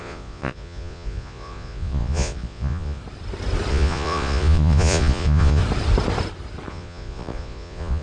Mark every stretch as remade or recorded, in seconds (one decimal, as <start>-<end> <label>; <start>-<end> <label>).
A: 0.0-3.0 remade; 3.0-3.7 recorded; 3.7-5.6 remade; 5.6-6.7 recorded; 6.7-8.0 remade